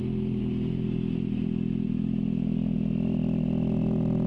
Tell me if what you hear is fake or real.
real